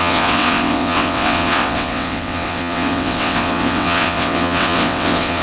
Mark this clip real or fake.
fake